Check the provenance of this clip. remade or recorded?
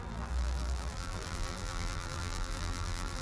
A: remade